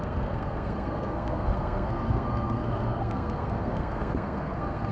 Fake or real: fake